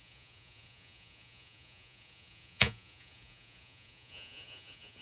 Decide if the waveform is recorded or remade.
remade